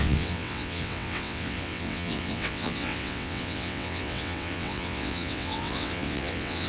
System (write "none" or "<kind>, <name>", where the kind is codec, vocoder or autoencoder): vocoder, WaveNeXt